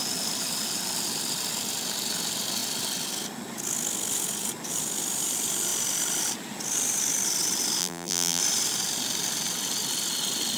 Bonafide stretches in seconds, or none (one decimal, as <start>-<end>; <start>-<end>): 0.0-7.8; 8.4-10.6